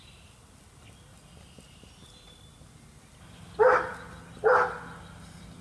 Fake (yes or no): no